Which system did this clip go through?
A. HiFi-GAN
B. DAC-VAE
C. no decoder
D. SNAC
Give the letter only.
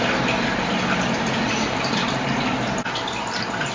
C